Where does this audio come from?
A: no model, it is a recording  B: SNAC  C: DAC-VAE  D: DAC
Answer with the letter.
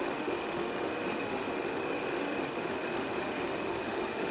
C